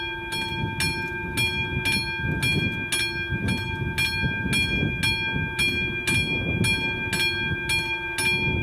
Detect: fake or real real